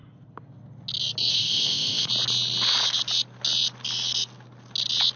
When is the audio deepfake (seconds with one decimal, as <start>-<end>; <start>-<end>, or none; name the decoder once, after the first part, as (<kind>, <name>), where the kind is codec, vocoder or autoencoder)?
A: 1.3-2.1 (codec, ZipCodec)